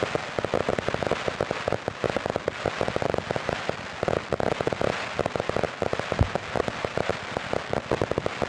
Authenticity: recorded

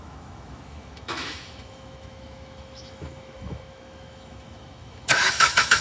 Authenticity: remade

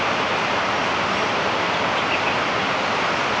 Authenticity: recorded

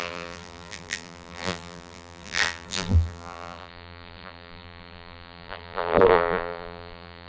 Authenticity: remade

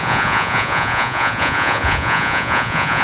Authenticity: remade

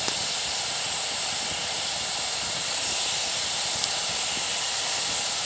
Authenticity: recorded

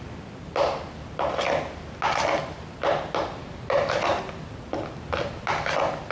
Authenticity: recorded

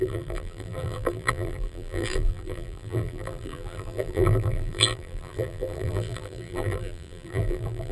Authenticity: remade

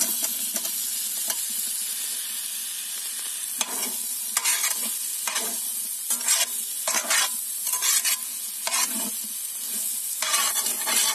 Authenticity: recorded